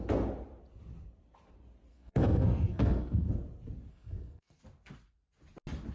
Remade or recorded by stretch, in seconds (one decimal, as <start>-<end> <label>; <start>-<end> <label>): 0.0-1.9 recorded; 1.9-3.3 remade; 3.3-3.9 recorded; 3.9-4.6 remade; 4.6-5.9 recorded